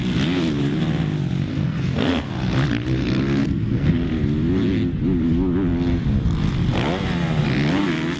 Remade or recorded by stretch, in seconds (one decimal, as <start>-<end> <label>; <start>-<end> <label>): 0.0-1.5 recorded; 1.5-2.3 remade; 2.3-3.4 recorded; 3.4-3.9 remade; 3.9-8.2 recorded